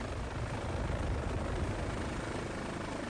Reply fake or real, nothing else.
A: real